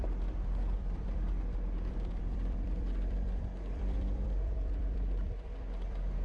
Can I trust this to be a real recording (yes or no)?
no